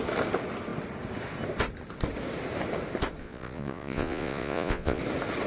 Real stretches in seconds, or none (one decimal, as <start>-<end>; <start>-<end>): 0.0-3.2; 5.0-5.5